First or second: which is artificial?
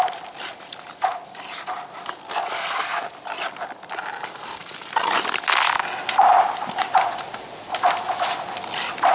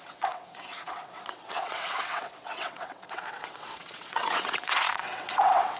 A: second